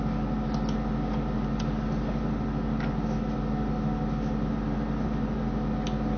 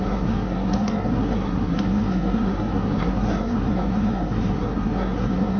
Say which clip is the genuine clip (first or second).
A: first